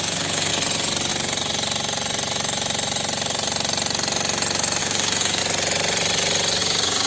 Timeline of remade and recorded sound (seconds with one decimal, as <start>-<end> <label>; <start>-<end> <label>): 0.0-0.5 remade; 0.5-4.8 recorded; 4.8-5.4 remade; 5.4-6.6 recorded; 6.6-7.1 remade